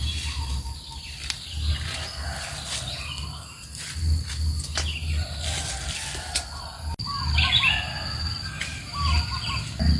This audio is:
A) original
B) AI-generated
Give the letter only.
A